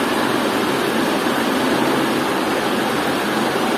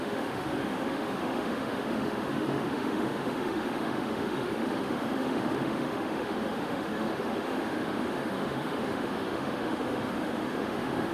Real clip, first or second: first